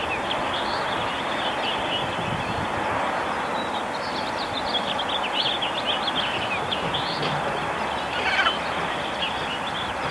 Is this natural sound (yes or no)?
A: yes